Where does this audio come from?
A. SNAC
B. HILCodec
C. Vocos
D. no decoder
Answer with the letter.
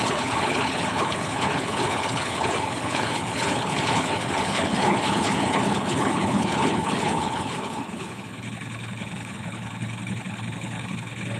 B